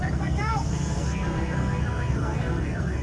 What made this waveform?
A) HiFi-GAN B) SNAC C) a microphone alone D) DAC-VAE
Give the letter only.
B